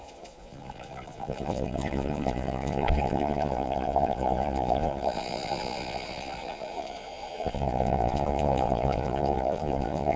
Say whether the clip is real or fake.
fake